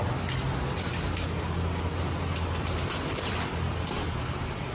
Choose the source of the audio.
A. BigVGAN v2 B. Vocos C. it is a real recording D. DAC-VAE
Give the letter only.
C